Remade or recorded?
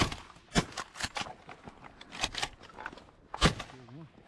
recorded